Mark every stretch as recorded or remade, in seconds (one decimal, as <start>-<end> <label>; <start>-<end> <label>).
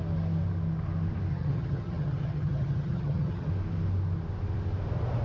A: 0.0-1.3 recorded; 1.3-3.5 remade; 3.5-5.2 recorded